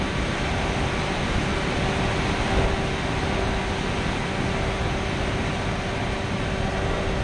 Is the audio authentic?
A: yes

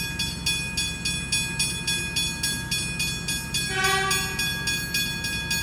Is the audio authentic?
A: yes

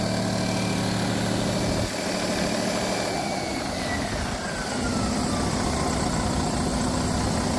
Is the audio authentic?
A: yes